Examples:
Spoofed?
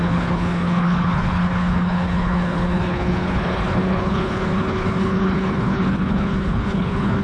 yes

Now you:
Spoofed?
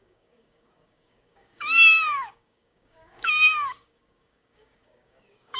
yes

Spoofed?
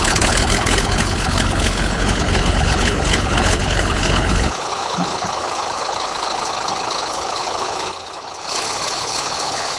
yes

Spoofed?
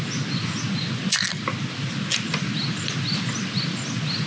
no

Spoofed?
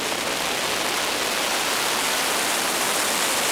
no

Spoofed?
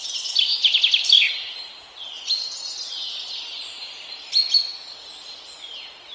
no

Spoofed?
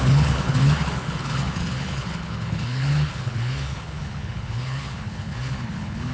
yes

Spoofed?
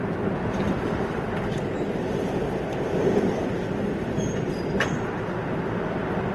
yes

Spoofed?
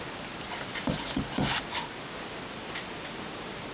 no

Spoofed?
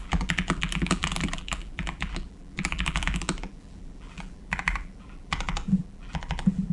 yes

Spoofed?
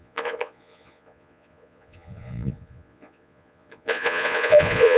yes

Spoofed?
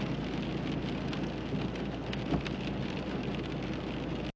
no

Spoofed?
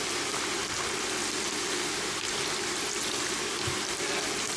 no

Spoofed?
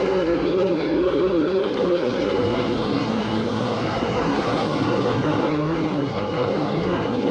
yes